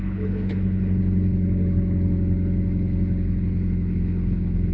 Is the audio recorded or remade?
remade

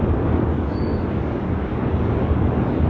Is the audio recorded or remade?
remade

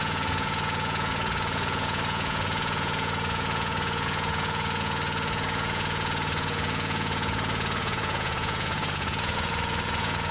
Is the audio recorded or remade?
remade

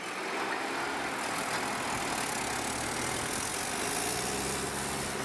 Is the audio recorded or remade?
recorded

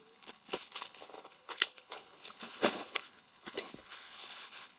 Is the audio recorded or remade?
remade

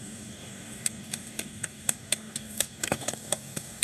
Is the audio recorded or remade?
remade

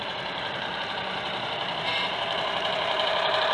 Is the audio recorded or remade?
remade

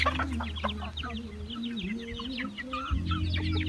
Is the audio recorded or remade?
recorded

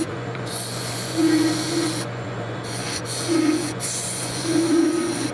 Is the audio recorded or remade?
remade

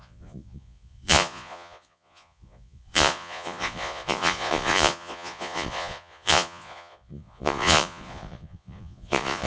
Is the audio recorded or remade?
remade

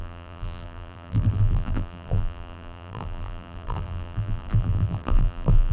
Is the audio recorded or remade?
remade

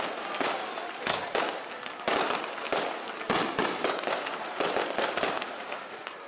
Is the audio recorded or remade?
recorded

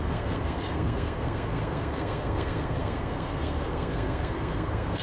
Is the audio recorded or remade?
remade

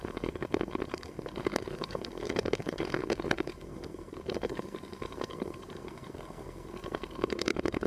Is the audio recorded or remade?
remade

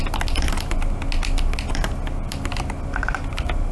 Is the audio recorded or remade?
recorded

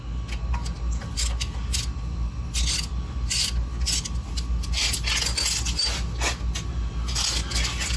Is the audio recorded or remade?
recorded